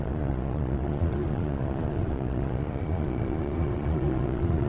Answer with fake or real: fake